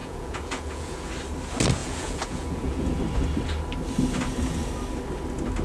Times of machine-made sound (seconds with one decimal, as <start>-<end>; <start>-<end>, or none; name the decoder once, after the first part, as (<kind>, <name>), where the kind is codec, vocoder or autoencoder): 0.0-1.1 (vocoder, Vocos); 1.8-3.0